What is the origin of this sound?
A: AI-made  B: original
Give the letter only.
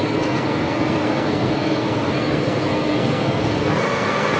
A